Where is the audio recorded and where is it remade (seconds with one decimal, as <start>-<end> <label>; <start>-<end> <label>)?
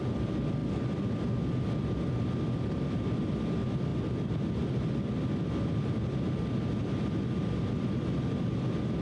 0.0-9.0 recorded